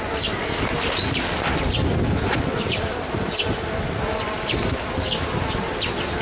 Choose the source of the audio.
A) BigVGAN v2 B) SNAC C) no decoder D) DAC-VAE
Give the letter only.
C